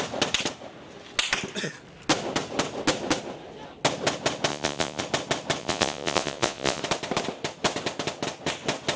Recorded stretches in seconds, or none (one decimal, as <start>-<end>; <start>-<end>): 0.0-4.5; 5.0-5.6; 6.8-9.0